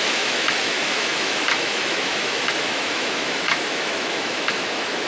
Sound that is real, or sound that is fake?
fake